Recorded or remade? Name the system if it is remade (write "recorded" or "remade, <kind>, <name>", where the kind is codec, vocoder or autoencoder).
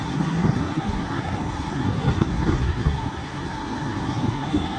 remade, codec, SNAC